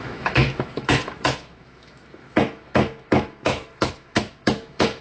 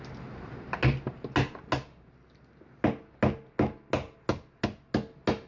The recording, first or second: second